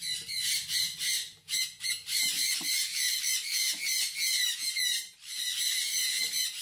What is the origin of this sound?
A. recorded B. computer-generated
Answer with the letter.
B